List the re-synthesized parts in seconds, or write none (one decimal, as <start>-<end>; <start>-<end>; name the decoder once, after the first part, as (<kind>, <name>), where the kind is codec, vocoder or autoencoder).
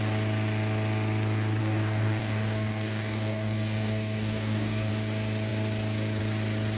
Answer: 1.6-4.9 (codec, DAC)